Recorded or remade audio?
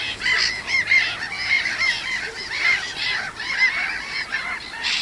recorded